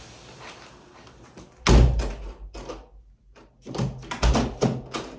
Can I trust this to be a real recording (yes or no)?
yes